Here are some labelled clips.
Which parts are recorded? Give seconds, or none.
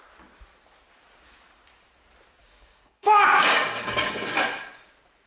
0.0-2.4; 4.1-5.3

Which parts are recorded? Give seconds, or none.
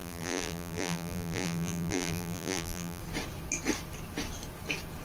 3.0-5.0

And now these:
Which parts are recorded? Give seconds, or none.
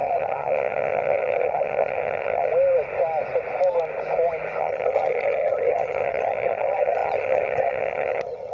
2.5-4.6